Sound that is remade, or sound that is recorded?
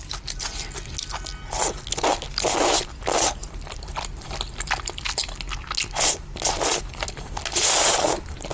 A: recorded